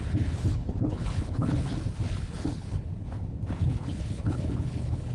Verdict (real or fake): fake